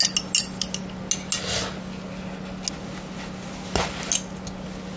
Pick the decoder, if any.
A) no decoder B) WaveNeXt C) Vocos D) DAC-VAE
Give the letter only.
A